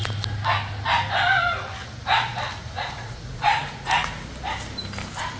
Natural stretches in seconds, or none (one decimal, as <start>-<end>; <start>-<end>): 0.0-2.6; 4.3-5.4